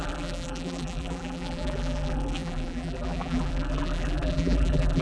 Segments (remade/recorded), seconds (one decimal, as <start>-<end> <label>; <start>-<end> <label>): 0.0-5.0 remade